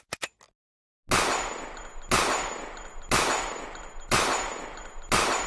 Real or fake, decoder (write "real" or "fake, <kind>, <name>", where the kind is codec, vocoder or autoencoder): real